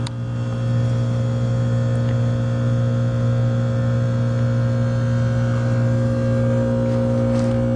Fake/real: real